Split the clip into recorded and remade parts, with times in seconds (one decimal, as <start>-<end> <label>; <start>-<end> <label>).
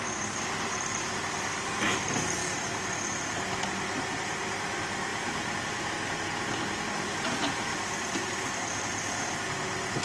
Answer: 0.0-5.1 recorded; 5.1-5.9 remade; 5.9-10.0 recorded